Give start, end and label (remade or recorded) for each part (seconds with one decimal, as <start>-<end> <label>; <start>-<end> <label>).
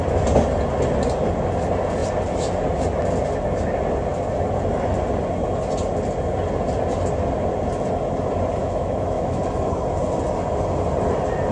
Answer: 0.0-8.6 recorded; 8.6-9.4 remade; 9.4-11.5 recorded